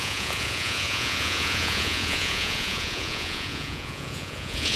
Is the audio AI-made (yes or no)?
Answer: yes